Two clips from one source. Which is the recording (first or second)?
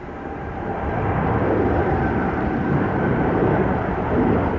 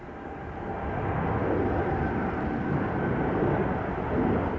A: second